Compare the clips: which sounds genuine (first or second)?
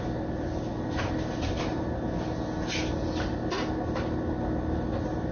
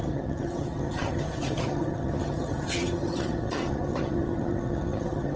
first